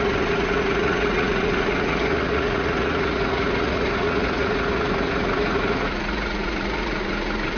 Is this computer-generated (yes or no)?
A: yes